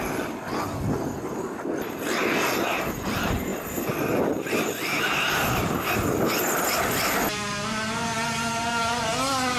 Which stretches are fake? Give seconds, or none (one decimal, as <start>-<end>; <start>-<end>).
none